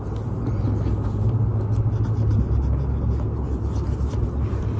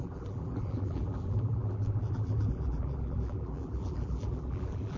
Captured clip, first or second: first